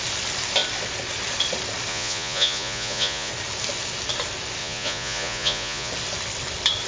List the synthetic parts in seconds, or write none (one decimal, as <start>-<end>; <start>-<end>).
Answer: 1.9-3.3; 4.6-5.9